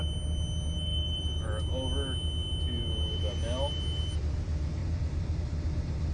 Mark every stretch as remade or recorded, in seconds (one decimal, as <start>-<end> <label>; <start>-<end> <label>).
0.0-4.8 recorded; 4.8-6.1 remade